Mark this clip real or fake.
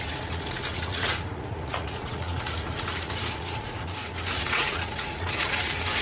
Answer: fake